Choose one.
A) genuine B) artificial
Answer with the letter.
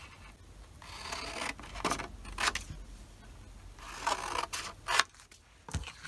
A